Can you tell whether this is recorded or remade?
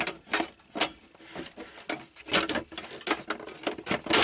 recorded